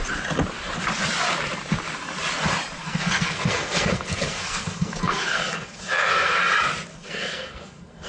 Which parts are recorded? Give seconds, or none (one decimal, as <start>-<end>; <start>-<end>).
0.0-2.8; 6.4-6.9